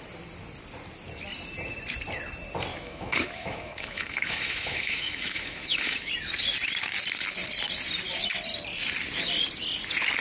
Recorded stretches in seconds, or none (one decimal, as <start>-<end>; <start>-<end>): 0.0-2.7; 6.1-10.2